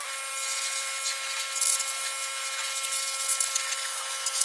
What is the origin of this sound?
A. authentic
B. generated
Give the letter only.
A